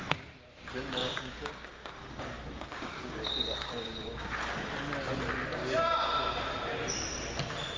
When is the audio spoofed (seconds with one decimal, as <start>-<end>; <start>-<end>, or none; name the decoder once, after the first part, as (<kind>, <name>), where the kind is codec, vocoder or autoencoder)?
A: 1.0-4.7 (codec, DAC)